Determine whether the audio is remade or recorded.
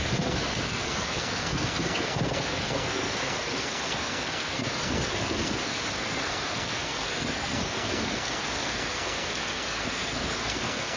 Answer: remade